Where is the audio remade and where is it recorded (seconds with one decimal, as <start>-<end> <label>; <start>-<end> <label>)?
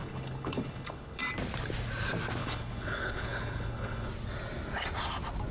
0.0-1.2 remade; 1.2-2.4 recorded; 2.4-4.1 remade; 4.1-5.5 recorded